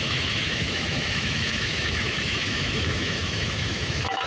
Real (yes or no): no